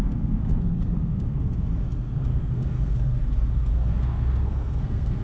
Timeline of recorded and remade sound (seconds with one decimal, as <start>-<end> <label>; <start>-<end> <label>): 0.0-5.2 remade